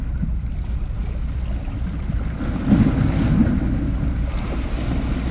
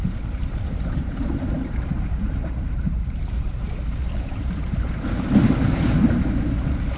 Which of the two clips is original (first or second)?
first